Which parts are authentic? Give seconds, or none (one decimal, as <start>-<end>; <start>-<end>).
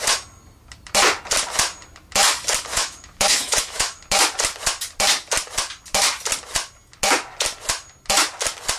0.0-2.7; 4.0-8.8